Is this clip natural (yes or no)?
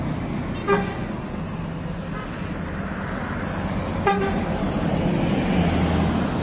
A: yes